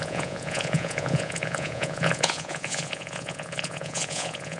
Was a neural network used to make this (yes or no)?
yes